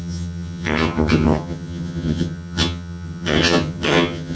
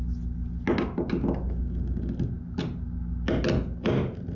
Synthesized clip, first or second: first